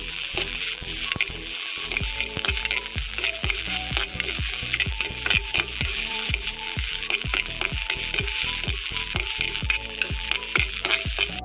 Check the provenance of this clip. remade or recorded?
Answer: remade